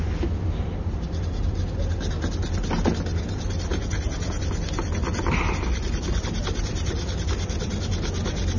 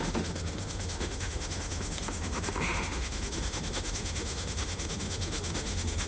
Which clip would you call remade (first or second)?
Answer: second